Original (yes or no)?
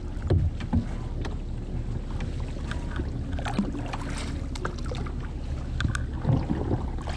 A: yes